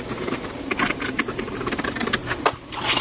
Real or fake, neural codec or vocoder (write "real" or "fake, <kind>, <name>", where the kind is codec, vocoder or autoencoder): fake, vocoder, BigVGAN v2